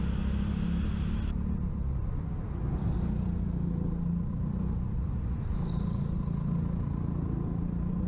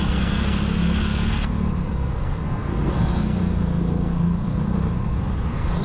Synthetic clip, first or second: second